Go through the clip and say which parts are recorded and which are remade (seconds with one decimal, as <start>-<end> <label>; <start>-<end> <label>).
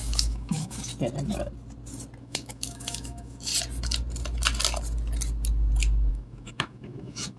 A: 0.0-0.9 remade; 0.9-2.2 recorded; 2.2-3.5 remade; 3.5-6.1 recorded; 6.1-7.4 remade